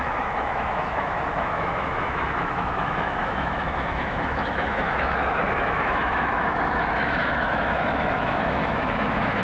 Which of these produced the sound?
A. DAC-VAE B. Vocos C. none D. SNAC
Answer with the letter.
A